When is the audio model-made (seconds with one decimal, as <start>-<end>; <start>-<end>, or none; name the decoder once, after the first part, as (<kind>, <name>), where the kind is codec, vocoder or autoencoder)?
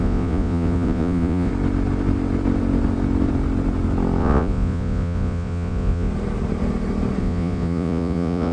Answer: 0.0-1.5 (vocoder, Vocos); 4.2-6.1; 7.2-8.5